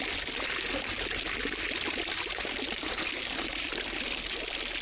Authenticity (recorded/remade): recorded